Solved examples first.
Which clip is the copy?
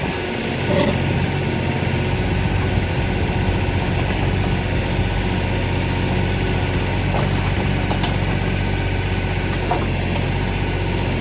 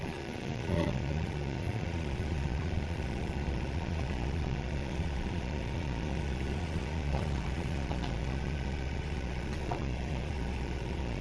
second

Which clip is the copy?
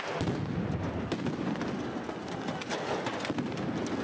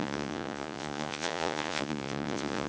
second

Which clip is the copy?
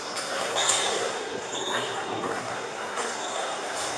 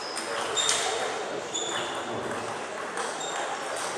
first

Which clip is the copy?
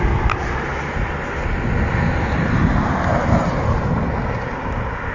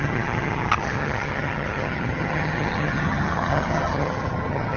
second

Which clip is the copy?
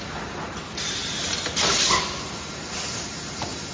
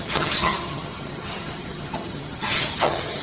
second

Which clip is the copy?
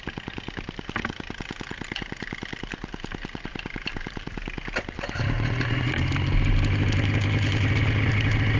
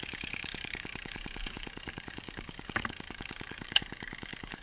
second